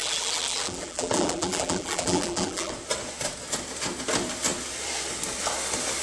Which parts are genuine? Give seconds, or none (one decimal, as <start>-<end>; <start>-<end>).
2.7-6.0